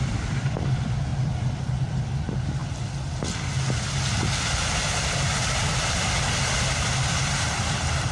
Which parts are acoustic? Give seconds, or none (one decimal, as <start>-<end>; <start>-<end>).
2.6-6.7